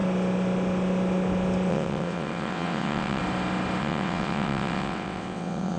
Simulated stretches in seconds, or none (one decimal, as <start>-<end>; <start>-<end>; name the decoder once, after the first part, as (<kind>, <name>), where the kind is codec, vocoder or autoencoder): 1.7-3.2 (vocoder, WaveNeXt); 3.8-5.8